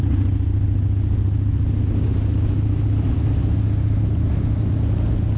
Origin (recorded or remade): recorded